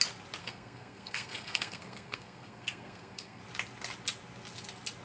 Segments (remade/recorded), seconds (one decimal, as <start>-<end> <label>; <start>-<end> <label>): 0.0-0.4 recorded; 0.4-3.4 remade; 3.4-5.0 recorded